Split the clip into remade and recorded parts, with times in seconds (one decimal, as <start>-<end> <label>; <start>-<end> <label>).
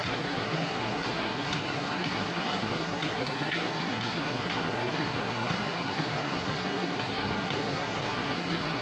0.0-8.8 remade